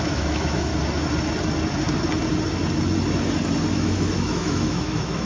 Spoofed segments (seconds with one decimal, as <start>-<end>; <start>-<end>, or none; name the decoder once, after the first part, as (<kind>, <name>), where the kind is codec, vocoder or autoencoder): 0.0-0.7 (autoencoder, DAC-VAE); 3.7-5.3